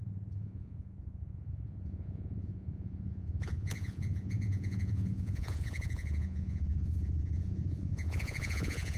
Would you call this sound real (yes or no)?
no